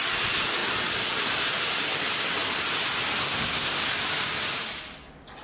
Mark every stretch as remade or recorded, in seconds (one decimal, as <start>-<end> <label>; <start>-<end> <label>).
0.0-3.2 recorded; 3.2-3.8 remade; 3.8-5.4 recorded